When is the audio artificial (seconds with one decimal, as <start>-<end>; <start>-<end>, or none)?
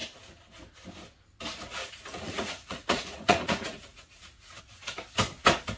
1.8-4.6